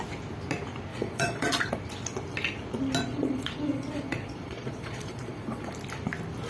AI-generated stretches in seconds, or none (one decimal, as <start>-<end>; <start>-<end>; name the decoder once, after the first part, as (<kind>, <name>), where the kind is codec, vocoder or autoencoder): 0.9-1.7 (vocoder, Vocos); 3.0-5.7